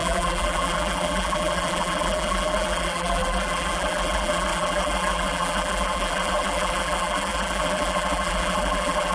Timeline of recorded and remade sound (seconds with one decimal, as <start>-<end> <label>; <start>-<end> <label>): 0.0-9.1 remade

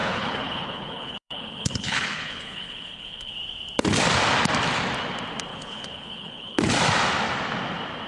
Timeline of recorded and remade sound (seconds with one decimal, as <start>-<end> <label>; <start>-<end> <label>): 0.0-3.3 remade; 3.3-5.5 recorded; 5.5-6.6 remade; 6.6-8.1 recorded

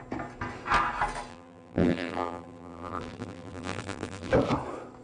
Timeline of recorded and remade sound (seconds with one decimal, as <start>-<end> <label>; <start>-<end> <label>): 0.0-1.3 recorded; 1.3-4.3 remade; 4.3-5.0 recorded

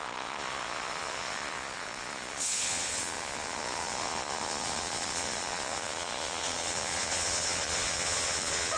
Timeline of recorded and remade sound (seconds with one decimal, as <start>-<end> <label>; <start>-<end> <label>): 0.0-8.8 remade

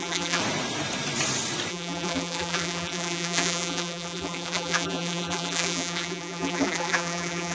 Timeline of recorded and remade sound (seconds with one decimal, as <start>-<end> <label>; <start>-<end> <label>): 0.0-0.4 remade; 0.4-1.7 recorded; 1.7-7.5 remade

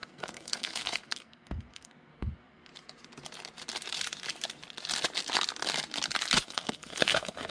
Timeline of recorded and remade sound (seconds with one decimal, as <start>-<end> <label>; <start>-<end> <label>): 0.0-2.7 remade; 2.7-6.4 recorded; 6.4-7.5 remade

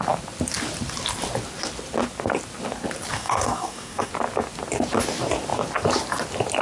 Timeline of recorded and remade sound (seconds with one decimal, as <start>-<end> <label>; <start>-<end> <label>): 0.0-3.1 recorded; 3.1-4.1 remade; 4.1-6.6 recorded

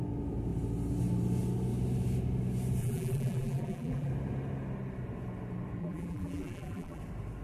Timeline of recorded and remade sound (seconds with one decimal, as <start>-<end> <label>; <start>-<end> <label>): 0.0-2.8 recorded; 2.8-4.1 remade; 4.1-5.8 recorded; 5.8-7.0 remade; 7.0-7.4 recorded